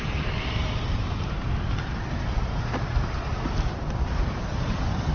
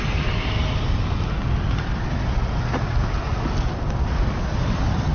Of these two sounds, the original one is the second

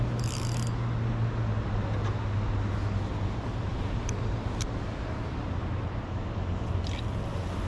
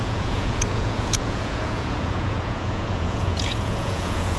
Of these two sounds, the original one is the first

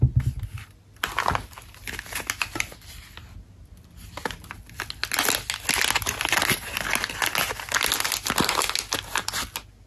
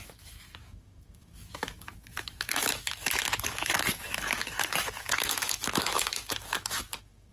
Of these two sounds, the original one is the first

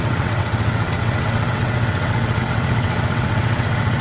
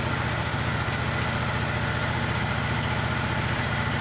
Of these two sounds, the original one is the second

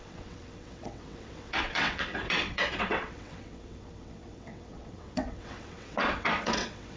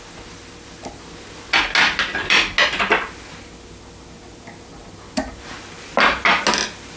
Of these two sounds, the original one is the second